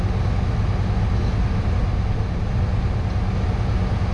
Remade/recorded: recorded